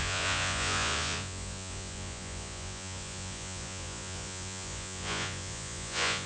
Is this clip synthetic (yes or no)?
yes